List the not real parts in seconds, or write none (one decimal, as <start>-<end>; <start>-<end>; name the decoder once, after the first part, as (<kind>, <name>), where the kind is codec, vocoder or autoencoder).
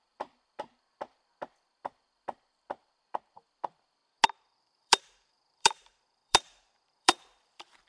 0.0-4.0 (vocoder, BigVGAN v2); 4.6-7.9